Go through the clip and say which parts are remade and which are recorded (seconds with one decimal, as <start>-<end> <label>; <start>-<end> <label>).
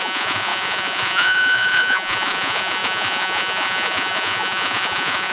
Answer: 0.0-5.3 remade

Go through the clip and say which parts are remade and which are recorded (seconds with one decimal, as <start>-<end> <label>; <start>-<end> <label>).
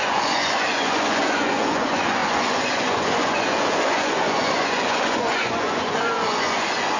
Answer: 0.0-7.0 remade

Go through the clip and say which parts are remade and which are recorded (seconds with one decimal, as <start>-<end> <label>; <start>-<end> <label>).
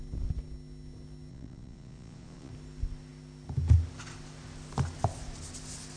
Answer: 0.0-1.3 recorded; 1.3-2.5 remade; 2.5-6.0 recorded